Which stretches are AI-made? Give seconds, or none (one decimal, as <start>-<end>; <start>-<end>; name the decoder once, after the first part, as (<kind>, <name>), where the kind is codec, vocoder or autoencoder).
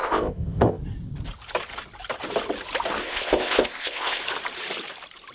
0.0-0.8 (codec, ZipCodec); 3.0-4.2